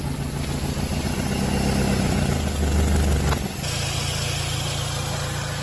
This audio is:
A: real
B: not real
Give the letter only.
A